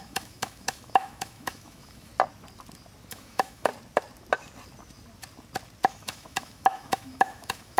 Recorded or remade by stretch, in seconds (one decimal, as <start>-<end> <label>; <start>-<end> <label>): 0.0-2.1 remade; 2.1-3.1 recorded; 3.1-3.7 remade; 3.7-5.9 recorded; 5.9-7.8 remade